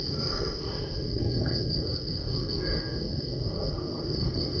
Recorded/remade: remade